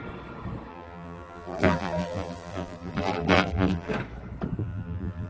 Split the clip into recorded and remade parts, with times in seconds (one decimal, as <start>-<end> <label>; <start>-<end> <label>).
0.0-0.7 recorded; 0.7-3.9 remade; 3.9-4.6 recorded; 4.6-5.3 remade